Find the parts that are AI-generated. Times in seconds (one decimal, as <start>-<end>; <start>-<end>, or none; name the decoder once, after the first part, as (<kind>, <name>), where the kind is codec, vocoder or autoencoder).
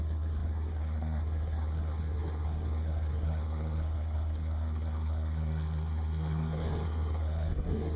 0.0-8.0 (codec, SNAC)